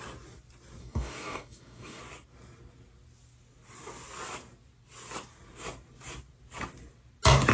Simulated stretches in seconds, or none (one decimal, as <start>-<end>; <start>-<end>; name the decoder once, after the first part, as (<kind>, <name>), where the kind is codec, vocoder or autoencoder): 0.8-2.0 (codec, DAC)